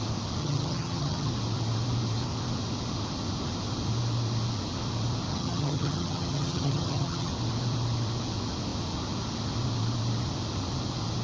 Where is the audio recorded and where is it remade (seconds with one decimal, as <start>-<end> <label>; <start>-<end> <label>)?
0.0-0.4 recorded; 0.4-1.3 remade; 1.3-5.3 recorded; 5.3-7.3 remade; 7.3-11.2 recorded